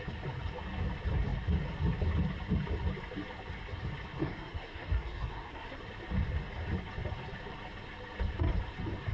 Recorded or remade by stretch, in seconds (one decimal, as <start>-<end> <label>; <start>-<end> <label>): 0.0-4.2 recorded; 4.2-5.8 remade; 5.8-9.1 recorded